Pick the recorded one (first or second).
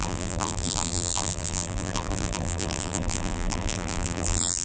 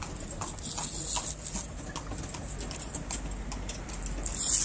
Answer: second